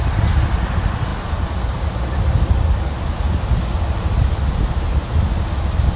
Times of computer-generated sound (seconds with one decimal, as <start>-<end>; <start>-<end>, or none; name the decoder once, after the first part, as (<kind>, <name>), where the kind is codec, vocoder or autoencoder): none